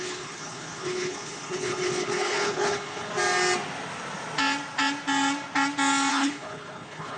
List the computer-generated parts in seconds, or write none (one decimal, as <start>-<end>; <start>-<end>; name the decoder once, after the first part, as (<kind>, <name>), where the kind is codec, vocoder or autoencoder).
0.0-3.1 (codec, HILCodec); 6.1-7.2